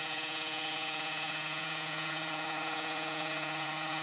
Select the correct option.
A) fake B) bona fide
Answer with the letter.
A